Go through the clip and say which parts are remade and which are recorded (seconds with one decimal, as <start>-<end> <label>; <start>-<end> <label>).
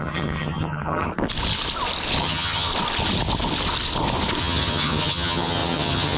0.0-1.1 remade; 1.1-2.2 recorded; 2.2-2.7 remade; 2.7-4.4 recorded; 4.4-6.2 remade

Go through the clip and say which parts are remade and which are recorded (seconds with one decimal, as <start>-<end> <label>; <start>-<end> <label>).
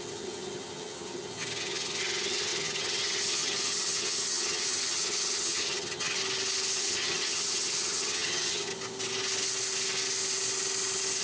0.0-6.2 remade; 6.2-6.8 recorded; 6.8-8.7 remade; 8.7-11.2 recorded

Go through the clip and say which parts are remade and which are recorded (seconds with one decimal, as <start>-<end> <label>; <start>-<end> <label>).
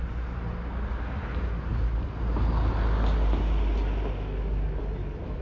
0.0-5.4 recorded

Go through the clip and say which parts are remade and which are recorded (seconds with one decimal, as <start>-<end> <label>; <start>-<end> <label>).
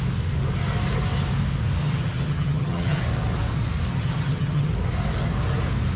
0.0-1.8 recorded; 1.8-3.0 remade; 3.0-3.9 recorded; 3.9-4.7 remade; 4.7-6.0 recorded